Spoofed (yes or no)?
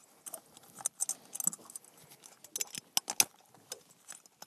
no